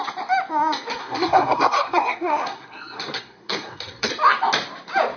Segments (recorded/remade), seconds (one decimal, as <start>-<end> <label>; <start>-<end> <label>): 0.0-1.0 recorded; 1.0-4.1 remade; 4.1-5.2 recorded